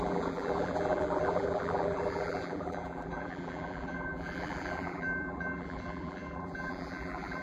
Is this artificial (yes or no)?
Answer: yes